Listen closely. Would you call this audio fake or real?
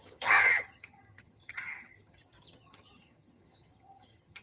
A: fake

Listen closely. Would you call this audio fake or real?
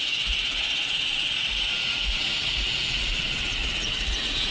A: fake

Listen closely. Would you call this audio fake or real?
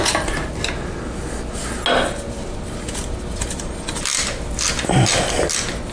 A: real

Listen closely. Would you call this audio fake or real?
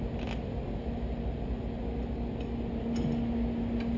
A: real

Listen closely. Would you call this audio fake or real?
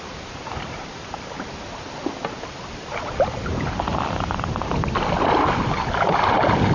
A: real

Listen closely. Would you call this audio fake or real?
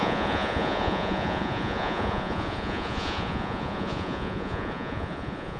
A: fake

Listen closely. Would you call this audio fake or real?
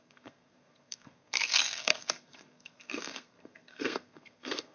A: fake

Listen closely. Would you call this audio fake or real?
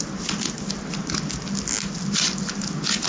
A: real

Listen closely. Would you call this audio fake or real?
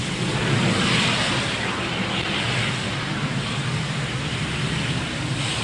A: real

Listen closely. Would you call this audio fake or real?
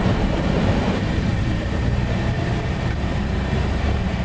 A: fake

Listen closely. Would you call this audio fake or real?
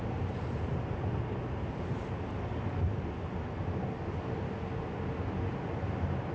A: real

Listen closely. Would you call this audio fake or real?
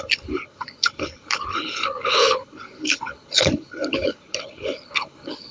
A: fake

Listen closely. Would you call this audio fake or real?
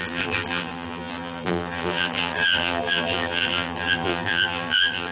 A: fake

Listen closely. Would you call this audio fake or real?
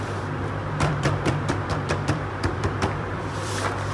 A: fake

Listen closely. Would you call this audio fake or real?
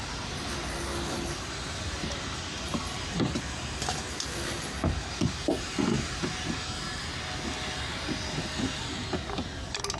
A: real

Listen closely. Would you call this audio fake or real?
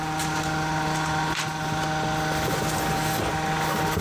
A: real